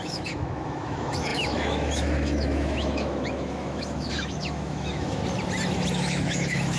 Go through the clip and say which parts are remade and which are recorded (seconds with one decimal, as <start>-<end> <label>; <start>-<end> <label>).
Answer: 0.0-5.2 remade; 5.2-5.9 recorded; 5.9-6.8 remade